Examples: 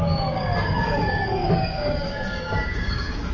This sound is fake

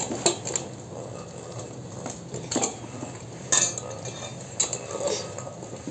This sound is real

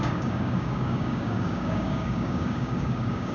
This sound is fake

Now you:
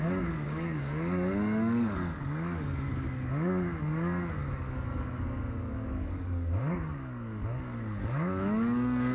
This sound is fake